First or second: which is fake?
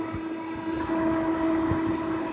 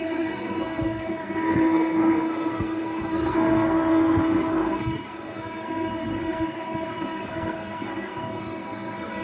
second